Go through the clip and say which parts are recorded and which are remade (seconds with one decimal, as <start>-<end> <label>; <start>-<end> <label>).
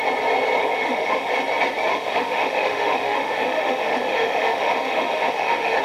0.0-0.6 recorded; 0.6-1.3 remade; 1.3-1.9 recorded; 1.9-5.8 remade